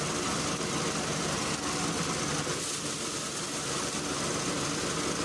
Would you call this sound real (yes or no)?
yes